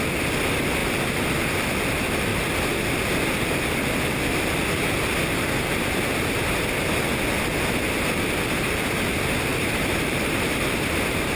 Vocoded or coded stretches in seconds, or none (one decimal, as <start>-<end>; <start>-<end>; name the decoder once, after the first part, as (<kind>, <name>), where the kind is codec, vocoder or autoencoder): 9.5-11.4 (vocoder, BigVGAN v2)